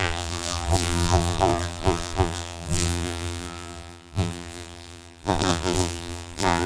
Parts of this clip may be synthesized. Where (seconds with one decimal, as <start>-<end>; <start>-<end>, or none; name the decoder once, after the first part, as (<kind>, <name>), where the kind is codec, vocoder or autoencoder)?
0.0-6.7 (vocoder, BigVGAN v2)